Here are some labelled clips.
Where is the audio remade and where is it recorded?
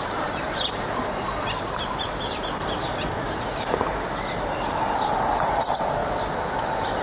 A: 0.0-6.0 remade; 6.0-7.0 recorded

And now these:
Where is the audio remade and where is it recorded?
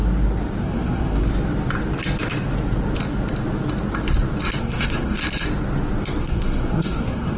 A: 0.0-0.6 recorded; 0.6-1.3 remade; 1.3-4.6 recorded; 4.6-5.2 remade; 5.2-6.2 recorded; 6.2-7.4 remade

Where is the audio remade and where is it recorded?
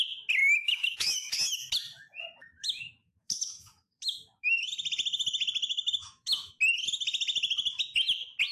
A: 0.0-0.4 recorded; 0.4-1.1 remade; 1.1-2.4 recorded; 2.4-4.7 remade; 4.7-5.7 recorded; 5.7-6.5 remade; 6.5-8.5 recorded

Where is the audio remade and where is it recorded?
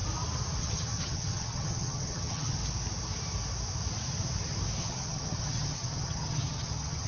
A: 0.0-0.6 recorded; 0.6-2.6 remade; 2.6-4.8 recorded; 4.8-7.1 remade